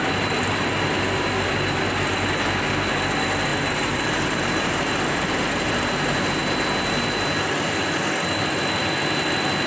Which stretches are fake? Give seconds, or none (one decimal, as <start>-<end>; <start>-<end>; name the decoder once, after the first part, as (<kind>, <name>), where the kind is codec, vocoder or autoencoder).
3.5-5.7 (vocoder, BigVGAN v2)